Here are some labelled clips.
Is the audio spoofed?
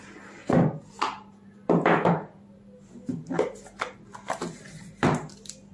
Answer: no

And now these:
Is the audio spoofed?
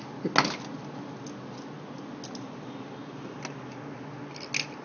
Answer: no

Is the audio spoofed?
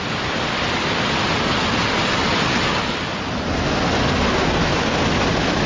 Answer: no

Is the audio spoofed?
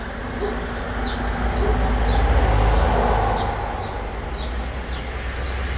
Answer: no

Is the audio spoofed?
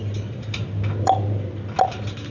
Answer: no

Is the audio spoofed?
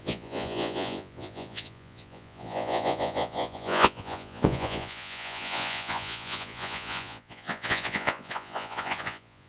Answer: yes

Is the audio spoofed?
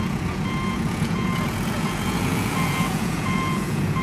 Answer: yes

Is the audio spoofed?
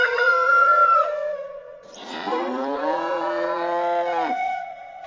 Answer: yes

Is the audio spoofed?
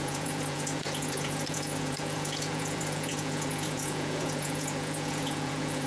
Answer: yes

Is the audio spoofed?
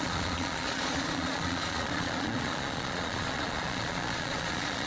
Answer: yes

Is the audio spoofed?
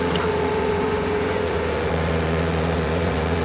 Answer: yes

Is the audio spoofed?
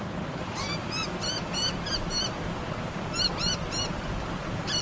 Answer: no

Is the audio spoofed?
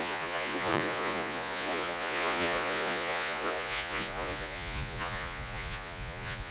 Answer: yes